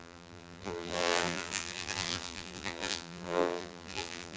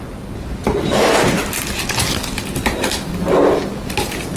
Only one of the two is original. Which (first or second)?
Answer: second